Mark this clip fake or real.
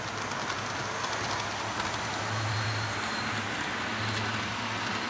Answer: real